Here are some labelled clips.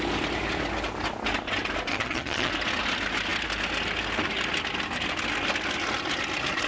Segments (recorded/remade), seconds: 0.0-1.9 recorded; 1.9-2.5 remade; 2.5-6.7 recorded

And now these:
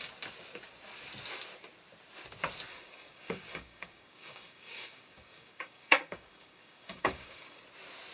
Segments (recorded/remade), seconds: 0.0-2.7 recorded; 2.7-7.6 remade; 7.6-8.1 recorded